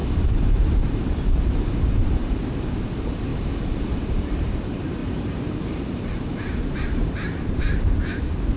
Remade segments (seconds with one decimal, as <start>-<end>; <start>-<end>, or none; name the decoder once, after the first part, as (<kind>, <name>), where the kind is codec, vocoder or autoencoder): 0.0-8.6 (vocoder, BigVGAN v2)